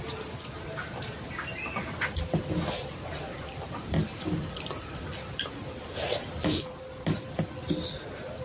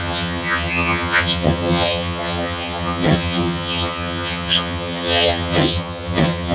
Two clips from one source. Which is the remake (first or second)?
second